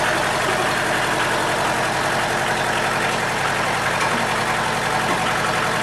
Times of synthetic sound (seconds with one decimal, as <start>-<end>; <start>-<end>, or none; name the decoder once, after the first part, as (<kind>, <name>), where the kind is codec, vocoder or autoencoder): none